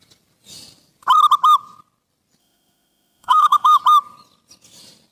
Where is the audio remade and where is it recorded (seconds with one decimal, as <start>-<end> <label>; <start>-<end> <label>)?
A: 0.0-2.4 recorded; 2.4-3.8 remade; 3.8-5.1 recorded